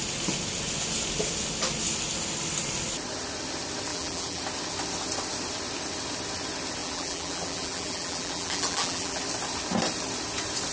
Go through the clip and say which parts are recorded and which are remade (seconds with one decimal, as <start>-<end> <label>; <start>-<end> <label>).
0.0-3.9 recorded; 3.9-4.4 remade; 4.4-6.8 recorded; 6.8-9.2 remade; 9.2-10.7 recorded